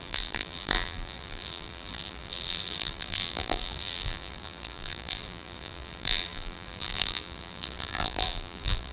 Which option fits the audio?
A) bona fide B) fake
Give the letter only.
B